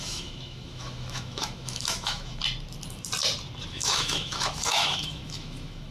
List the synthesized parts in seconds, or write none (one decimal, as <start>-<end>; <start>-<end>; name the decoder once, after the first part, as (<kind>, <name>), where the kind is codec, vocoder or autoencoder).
0.0-2.4 (autoencoder, DAC-VAE); 3.7-5.9